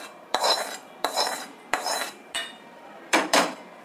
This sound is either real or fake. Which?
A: fake